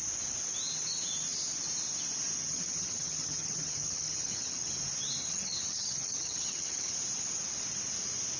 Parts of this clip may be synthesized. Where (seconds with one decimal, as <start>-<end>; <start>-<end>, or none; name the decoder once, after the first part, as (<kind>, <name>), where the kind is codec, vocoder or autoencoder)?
2.5-4.7 (vocoder, HiFi-GAN); 5.2-6.9